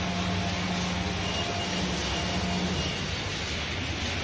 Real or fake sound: real